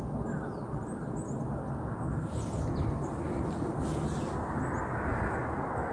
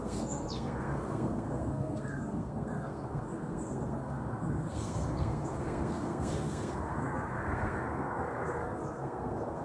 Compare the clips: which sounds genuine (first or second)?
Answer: first